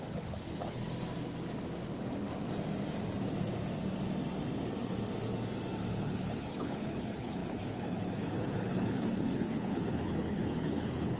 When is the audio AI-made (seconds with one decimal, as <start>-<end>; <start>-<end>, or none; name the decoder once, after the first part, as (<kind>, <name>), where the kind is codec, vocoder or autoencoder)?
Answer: 0.0-0.8 (codec, HILCodec); 5.9-11.2